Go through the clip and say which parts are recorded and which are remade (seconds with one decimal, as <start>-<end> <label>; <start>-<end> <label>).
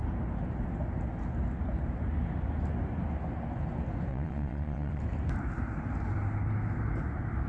0.0-4.1 recorded; 4.1-5.0 remade; 5.0-7.5 recorded